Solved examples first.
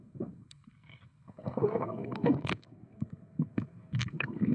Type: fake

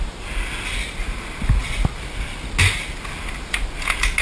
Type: real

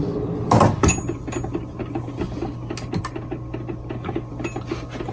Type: real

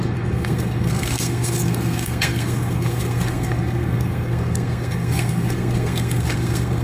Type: fake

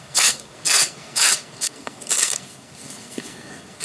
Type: fake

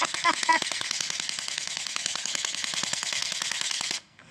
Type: fake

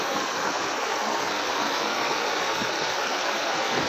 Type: fake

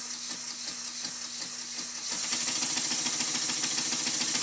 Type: real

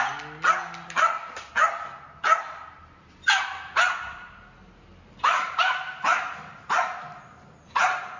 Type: real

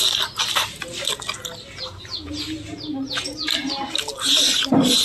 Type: real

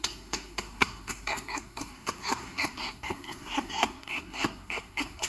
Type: fake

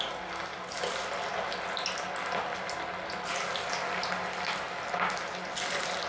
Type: real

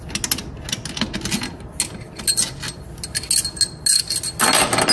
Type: real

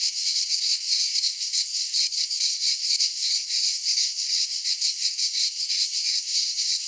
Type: fake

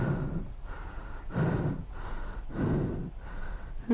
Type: real